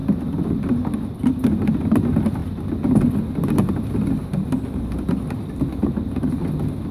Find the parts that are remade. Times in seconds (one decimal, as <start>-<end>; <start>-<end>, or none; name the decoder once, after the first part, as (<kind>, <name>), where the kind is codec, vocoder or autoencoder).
none